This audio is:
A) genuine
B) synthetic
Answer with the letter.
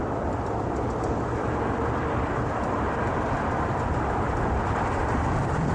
B